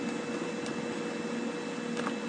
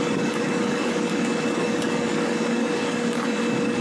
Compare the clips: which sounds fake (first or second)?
second